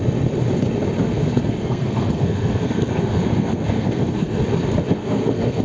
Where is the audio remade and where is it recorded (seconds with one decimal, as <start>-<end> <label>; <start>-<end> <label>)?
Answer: 0.0-1.0 recorded; 1.0-4.4 remade; 4.4-5.0 recorded; 5.0-5.6 remade